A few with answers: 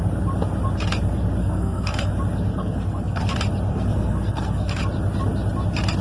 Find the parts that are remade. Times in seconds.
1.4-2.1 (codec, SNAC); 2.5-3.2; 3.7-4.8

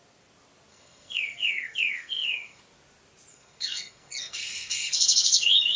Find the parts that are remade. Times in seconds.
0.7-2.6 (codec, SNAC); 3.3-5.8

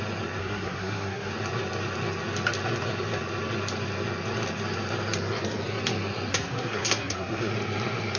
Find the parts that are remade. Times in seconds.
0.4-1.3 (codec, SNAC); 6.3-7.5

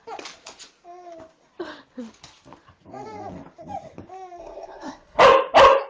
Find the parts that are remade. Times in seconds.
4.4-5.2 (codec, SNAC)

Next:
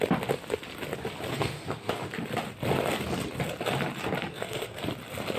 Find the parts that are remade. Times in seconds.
1.3-1.9 (codec, SNAC); 4.3-4.8